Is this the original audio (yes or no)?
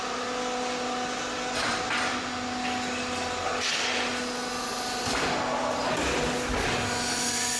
yes